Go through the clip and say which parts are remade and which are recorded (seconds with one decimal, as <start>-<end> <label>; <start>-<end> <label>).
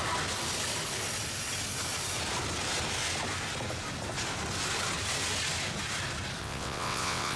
0.0-6.4 recorded; 6.4-7.4 remade